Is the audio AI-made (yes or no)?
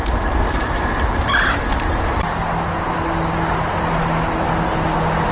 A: no